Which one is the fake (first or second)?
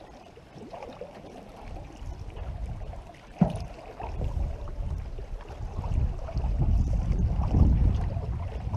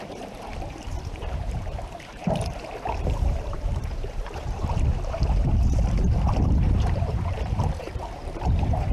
second